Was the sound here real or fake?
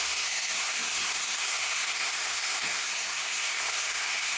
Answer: fake